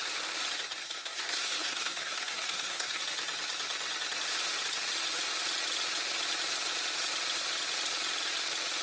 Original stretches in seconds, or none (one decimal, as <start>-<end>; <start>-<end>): 0.0-0.8; 3.0-8.8